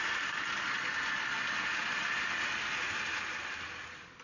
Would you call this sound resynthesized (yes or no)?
no